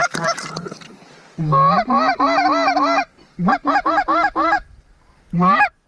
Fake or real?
real